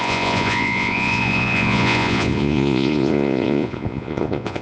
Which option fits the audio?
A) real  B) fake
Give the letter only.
B